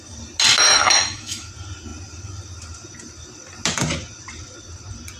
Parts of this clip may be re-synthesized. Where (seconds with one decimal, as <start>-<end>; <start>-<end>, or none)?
0.7-1.5